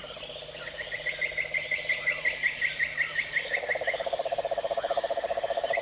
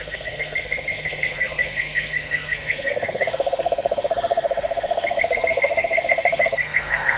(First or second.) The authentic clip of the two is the first